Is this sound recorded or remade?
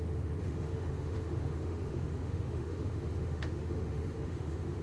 remade